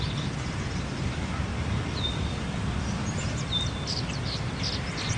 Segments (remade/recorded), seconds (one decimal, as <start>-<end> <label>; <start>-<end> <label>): 0.0-5.2 recorded